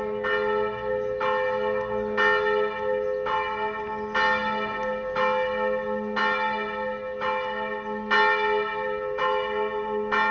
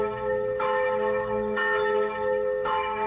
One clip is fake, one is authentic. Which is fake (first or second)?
second